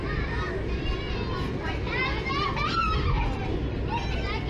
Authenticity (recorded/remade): recorded